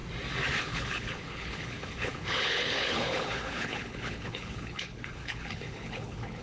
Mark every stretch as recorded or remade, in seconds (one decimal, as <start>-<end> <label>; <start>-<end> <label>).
0.0-0.6 recorded; 0.6-6.4 remade